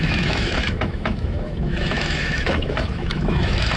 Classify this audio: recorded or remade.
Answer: remade